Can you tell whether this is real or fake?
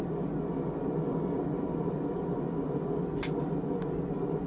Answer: real